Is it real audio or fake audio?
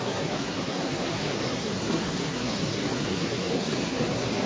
fake